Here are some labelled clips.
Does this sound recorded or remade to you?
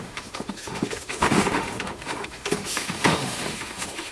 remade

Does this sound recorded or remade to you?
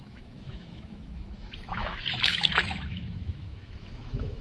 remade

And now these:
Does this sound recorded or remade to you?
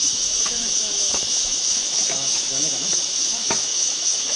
remade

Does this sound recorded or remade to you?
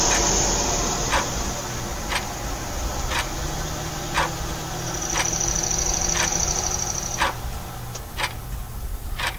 recorded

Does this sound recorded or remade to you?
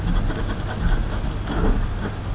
recorded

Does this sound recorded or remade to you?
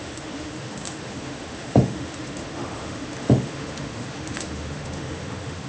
remade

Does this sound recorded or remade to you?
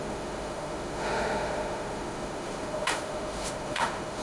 remade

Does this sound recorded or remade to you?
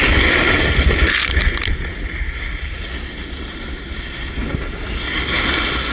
recorded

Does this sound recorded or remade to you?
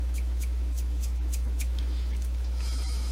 remade